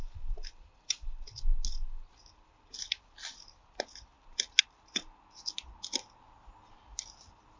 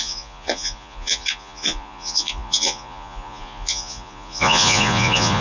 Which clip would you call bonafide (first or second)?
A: first